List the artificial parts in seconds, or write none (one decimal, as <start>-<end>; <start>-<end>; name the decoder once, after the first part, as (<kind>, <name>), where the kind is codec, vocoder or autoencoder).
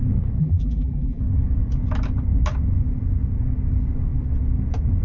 0.4-1.2 (vocoder, BigVGAN v2)